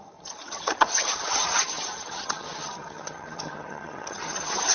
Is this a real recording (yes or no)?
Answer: no